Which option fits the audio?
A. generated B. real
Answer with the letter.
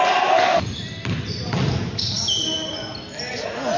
B